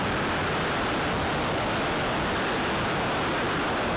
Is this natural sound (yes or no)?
yes